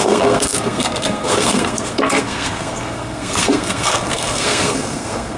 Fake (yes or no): yes